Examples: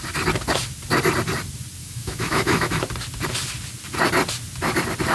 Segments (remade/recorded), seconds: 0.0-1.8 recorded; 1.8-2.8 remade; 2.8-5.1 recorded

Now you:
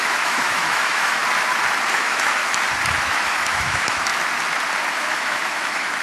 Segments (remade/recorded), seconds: 0.0-1.2 remade; 1.2-1.9 recorded; 1.9-2.4 remade; 2.4-3.0 recorded; 3.0-4.1 remade; 4.1-4.9 recorded; 4.9-6.0 remade

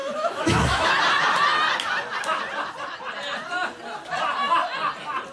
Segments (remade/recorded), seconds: 0.0-0.9 remade; 0.9-5.3 recorded

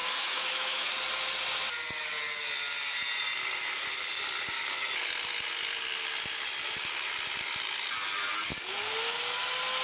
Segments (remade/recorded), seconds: 0.0-0.9 remade; 0.9-9.8 recorded

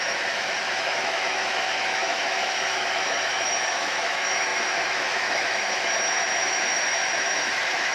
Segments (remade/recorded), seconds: 0.0-7.9 remade